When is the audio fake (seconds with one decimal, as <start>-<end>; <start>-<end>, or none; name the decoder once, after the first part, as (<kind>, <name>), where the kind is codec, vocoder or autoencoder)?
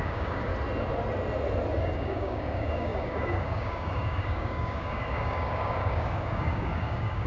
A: 0.0-0.5 (codec, DAC); 1.8-7.3